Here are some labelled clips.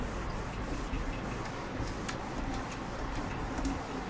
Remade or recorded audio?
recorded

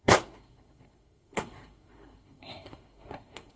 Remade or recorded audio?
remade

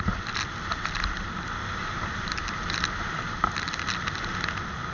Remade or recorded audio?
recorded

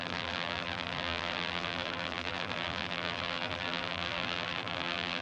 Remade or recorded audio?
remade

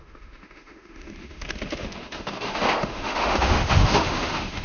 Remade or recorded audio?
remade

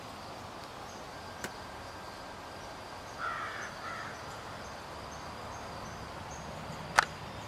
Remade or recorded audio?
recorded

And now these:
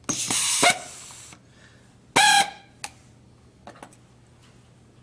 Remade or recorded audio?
recorded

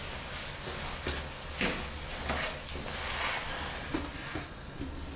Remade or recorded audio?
recorded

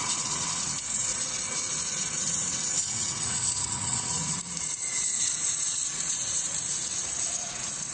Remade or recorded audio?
remade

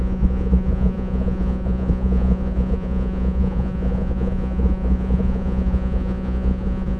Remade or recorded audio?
remade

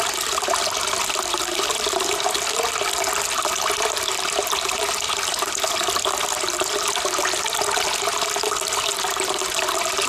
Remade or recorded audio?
recorded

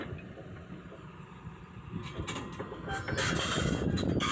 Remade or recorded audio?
recorded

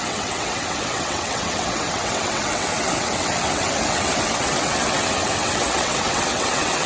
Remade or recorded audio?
remade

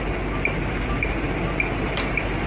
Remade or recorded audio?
recorded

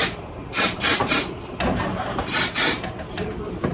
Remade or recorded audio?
remade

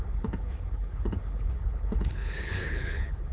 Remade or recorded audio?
remade